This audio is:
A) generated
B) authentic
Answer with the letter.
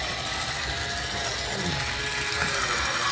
B